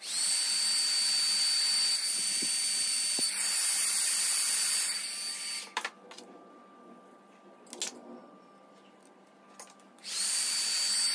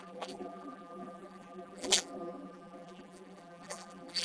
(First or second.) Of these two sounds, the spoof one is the second